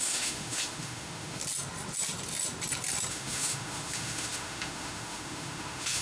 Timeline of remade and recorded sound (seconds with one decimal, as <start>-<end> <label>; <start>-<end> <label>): 0.0-1.4 remade; 1.4-3.1 recorded; 3.1-6.0 remade